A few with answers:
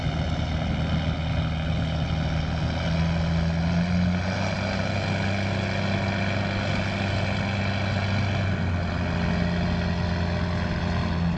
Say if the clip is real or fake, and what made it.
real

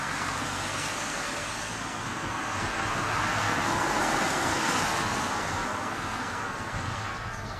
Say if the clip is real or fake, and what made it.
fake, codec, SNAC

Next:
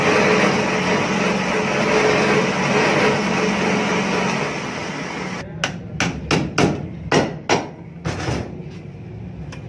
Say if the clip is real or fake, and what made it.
real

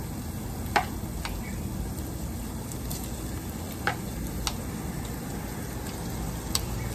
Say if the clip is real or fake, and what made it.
real